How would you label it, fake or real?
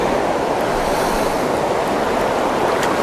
real